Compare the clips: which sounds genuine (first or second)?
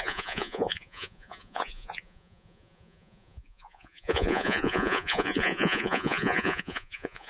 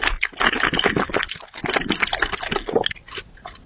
second